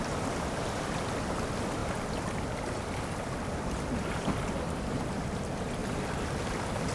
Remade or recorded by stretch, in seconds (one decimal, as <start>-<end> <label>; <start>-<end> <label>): 0.0-5.8 recorded; 5.8-6.3 remade; 6.3-6.9 recorded